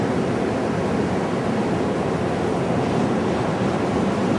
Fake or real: real